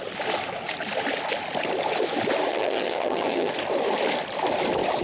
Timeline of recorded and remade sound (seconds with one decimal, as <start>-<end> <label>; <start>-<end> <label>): 0.0-2.5 recorded; 2.5-3.5 remade; 3.5-5.0 recorded